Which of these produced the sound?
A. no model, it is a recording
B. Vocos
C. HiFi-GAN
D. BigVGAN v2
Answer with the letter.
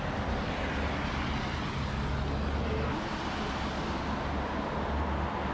A